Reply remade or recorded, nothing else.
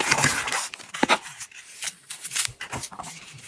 remade